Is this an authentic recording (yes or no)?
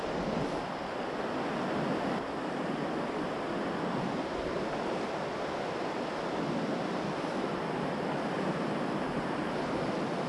yes